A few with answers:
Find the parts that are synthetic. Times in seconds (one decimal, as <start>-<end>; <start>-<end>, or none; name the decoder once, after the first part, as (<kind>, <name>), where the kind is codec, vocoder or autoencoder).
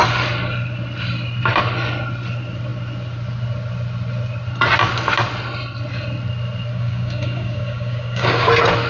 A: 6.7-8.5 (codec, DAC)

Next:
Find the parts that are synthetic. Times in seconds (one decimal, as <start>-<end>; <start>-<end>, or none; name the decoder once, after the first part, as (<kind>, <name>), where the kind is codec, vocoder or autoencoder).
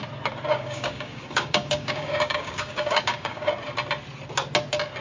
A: 0.5-3.5 (codec, DAC)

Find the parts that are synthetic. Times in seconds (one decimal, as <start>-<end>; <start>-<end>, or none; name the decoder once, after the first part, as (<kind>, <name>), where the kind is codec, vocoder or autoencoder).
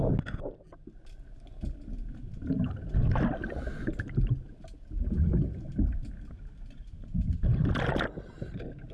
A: none